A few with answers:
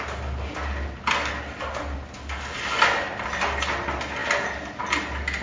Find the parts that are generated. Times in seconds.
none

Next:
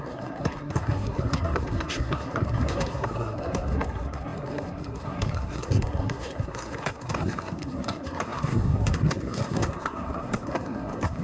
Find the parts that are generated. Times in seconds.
0.0-11.2

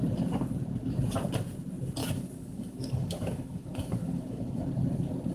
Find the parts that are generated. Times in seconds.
2.0-4.6